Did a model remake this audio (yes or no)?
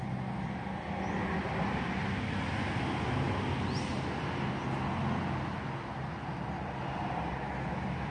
no